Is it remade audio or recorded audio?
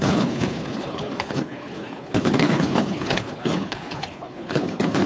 remade